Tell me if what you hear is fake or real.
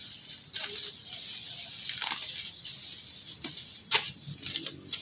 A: real